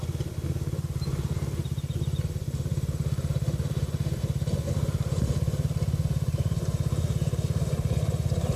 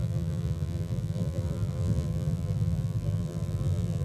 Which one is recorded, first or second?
first